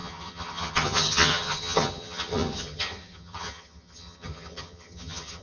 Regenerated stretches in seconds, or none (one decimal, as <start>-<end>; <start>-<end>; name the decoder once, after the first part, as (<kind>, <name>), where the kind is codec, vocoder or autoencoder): 0.0-5.4 (vocoder, HiFi-GAN)